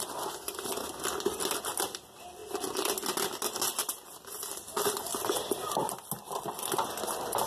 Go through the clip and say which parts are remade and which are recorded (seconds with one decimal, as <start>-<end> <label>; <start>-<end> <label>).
0.0-7.5 recorded